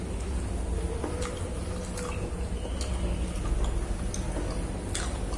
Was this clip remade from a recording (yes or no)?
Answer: no